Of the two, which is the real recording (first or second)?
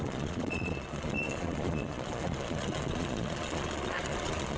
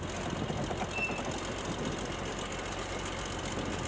second